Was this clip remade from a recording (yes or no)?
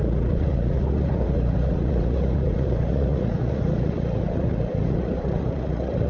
yes